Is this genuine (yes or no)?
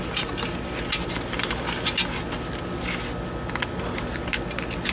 yes